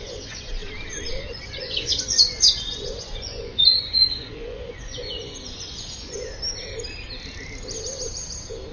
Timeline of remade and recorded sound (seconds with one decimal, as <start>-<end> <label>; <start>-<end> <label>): 0.0-0.6 remade; 0.6-1.3 recorded; 1.3-6.3 remade; 6.3-8.7 recorded